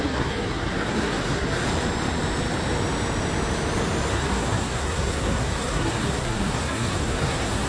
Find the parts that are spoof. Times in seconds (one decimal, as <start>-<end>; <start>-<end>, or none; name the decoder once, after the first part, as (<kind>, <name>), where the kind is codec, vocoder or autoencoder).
0.0-1.6 (codec, SNAC); 4.1-7.7